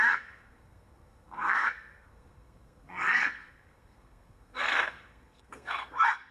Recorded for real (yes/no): no